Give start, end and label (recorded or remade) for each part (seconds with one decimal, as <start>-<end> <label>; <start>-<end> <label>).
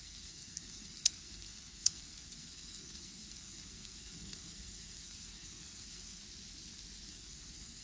0.0-6.2 remade; 6.2-7.1 recorded; 7.1-7.8 remade